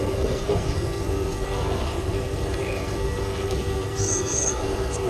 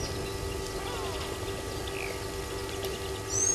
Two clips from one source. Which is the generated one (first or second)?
first